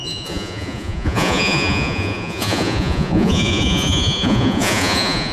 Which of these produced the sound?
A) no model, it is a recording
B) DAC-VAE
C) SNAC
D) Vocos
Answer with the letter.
D